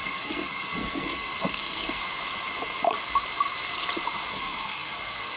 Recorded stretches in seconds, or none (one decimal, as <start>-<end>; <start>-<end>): 2.0-4.3